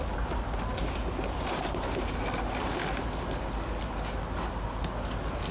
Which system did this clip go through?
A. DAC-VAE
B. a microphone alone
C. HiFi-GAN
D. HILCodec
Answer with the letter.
B